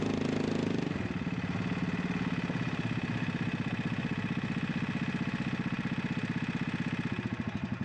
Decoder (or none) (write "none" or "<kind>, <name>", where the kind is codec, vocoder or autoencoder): none